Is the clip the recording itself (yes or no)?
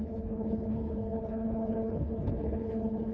no